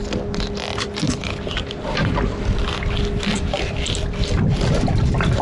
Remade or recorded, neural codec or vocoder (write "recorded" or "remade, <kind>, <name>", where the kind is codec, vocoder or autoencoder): recorded